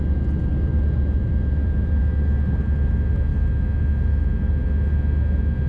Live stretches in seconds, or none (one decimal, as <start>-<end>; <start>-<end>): 0.0-0.7; 2.0-5.7